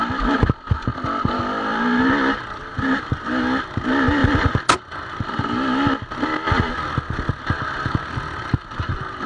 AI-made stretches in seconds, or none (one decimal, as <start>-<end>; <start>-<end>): none